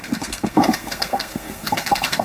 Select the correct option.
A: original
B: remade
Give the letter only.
B